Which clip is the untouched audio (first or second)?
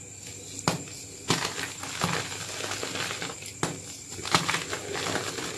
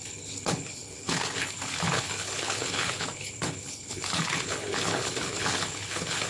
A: first